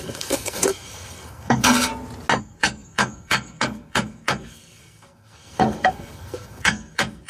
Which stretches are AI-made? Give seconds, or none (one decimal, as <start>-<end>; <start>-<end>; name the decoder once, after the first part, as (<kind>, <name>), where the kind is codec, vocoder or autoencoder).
0.0-1.9 (codec, SNAC); 2.4-7.3